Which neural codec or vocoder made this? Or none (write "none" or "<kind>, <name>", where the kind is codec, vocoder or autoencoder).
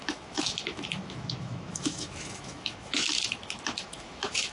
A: autoencoder, DAC-VAE